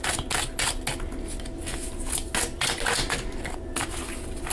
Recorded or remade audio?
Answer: recorded